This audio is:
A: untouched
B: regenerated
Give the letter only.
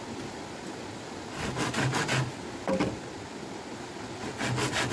A